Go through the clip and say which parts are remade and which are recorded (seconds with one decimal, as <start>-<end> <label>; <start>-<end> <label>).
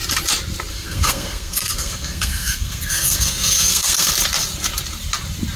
0.0-0.7 recorded; 0.7-4.1 remade; 4.1-5.6 recorded